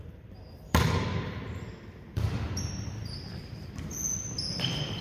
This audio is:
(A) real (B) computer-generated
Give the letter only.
B